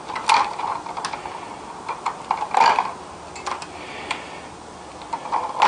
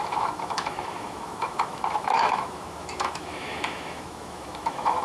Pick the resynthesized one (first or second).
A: second